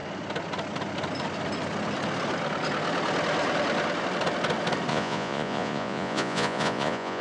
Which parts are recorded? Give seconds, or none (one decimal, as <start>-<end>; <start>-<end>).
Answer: 0.0-4.9